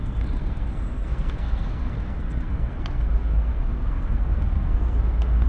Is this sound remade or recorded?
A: remade